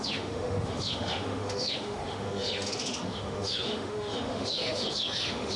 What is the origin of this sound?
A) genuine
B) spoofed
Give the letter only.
B